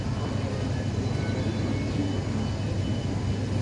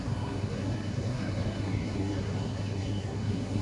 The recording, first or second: first